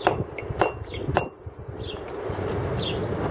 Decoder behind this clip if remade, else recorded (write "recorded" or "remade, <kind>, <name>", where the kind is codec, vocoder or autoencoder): recorded